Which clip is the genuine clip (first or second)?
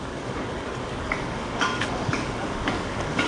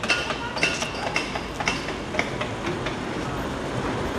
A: second